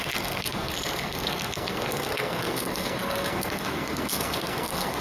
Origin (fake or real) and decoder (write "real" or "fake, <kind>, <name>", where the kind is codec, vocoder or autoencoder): fake, codec, SNAC